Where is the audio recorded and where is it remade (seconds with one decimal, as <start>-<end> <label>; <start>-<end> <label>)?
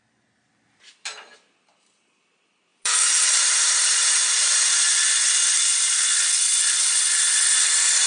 0.0-2.7 recorded; 2.7-4.5 remade; 4.5-8.1 recorded